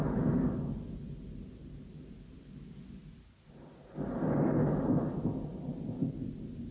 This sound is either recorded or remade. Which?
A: recorded